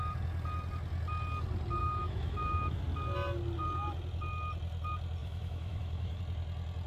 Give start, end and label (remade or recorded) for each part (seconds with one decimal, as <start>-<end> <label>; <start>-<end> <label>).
0.0-1.8 recorded; 1.8-2.8 remade; 2.8-5.2 recorded; 5.2-6.2 remade; 6.2-6.9 recorded